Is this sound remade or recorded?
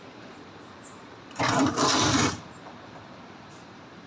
remade